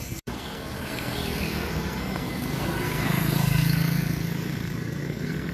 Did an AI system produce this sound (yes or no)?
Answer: yes